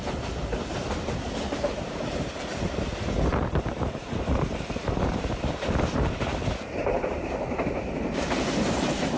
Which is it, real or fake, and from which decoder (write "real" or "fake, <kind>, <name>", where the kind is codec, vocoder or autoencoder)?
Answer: fake, vocoder, BigVGAN v2